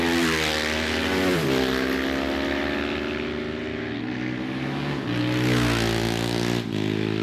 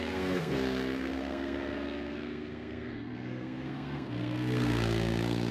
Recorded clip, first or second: first